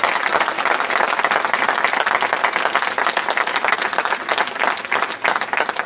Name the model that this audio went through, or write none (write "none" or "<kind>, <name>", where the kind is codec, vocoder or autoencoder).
none